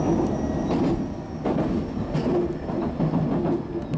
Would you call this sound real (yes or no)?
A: yes